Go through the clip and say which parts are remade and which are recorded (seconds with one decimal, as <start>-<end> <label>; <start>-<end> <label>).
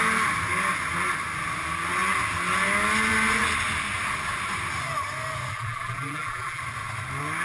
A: 0.0-5.5 recorded; 5.5-6.6 remade; 6.6-7.4 recorded